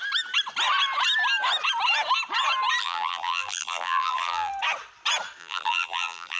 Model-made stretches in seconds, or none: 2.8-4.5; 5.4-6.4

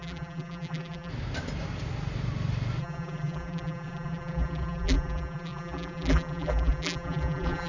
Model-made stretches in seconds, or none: 0.0-1.1; 2.8-7.7

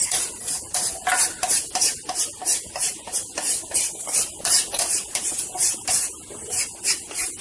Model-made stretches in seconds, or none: 0.0-0.8; 1.4-7.4

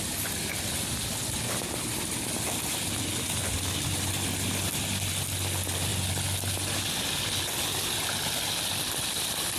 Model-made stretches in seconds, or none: none